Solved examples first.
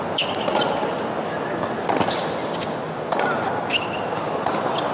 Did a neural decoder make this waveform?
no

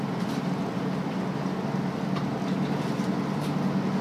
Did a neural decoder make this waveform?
no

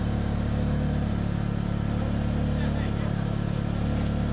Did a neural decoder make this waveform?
no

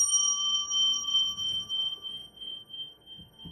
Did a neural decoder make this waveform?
yes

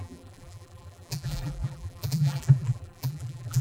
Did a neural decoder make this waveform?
yes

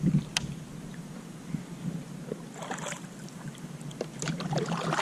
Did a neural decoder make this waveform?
no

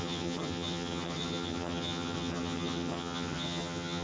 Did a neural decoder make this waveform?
yes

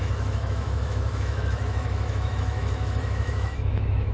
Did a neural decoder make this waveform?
yes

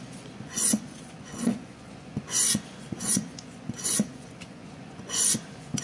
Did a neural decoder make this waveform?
yes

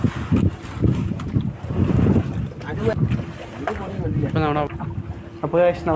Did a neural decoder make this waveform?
no